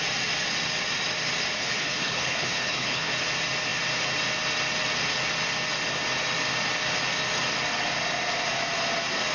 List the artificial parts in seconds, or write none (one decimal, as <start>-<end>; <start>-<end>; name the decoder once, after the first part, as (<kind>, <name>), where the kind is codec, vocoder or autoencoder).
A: 1.6-3.1 (codec, HILCodec)